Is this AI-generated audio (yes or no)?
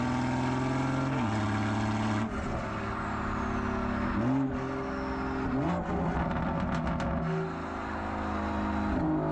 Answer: no